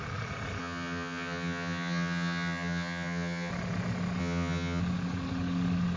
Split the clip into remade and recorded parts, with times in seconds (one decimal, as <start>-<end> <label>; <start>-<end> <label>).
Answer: 0.0-0.6 recorded; 0.6-3.5 remade; 3.5-4.2 recorded; 4.2-4.8 remade; 4.8-6.0 recorded